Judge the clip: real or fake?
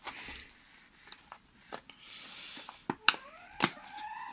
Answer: real